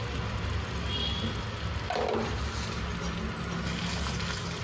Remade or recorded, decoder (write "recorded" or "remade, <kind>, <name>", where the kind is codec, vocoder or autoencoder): recorded